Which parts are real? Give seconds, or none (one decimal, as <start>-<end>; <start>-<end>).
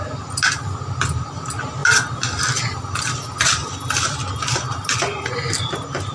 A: 0.0-6.1